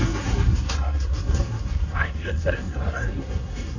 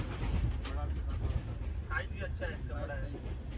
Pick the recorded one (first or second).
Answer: second